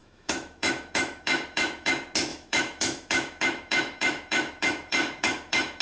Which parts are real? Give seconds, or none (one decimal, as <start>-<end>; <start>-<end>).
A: 1.9-2.3